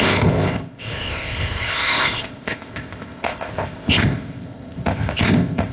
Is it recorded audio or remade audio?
remade